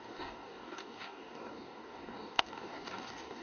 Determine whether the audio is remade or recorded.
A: remade